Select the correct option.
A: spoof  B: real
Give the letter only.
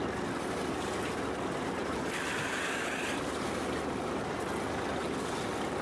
B